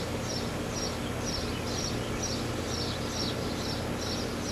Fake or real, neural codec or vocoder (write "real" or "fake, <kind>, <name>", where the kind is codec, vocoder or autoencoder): real